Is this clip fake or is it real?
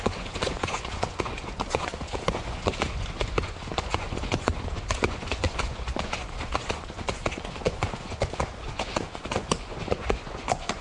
fake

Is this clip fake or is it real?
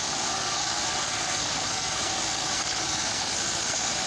fake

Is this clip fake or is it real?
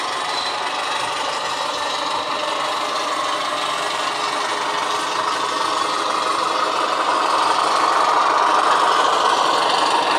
real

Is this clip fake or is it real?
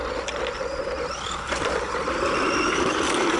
real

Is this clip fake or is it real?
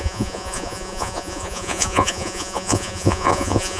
fake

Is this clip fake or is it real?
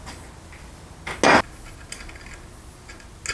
real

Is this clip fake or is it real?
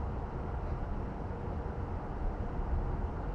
real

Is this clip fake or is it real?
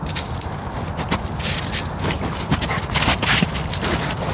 real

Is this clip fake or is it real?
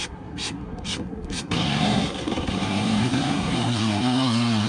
fake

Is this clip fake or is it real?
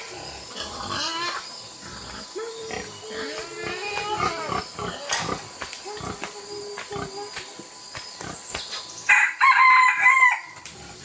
real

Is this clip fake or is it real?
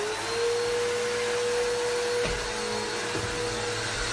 real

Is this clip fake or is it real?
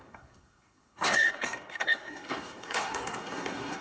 fake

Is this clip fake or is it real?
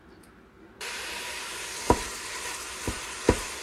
fake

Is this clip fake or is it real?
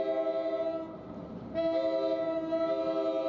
real